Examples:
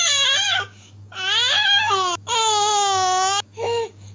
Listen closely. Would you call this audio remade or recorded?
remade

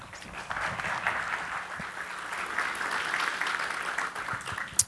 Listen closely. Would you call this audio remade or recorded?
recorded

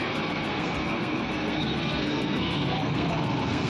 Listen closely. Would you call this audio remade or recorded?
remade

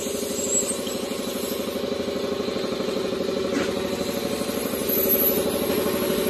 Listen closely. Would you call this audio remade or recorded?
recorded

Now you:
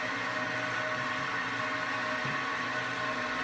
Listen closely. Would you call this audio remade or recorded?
recorded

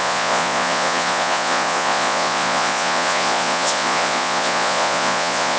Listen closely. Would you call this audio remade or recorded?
remade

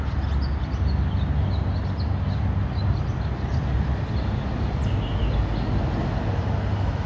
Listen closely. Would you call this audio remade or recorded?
recorded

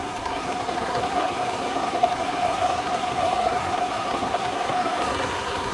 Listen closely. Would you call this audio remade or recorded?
remade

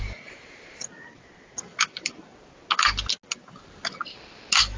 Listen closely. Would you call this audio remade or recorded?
recorded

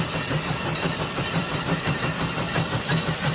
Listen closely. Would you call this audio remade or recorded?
remade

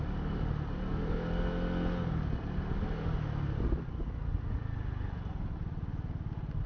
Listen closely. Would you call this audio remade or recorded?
recorded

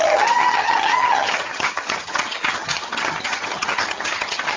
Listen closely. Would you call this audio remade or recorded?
remade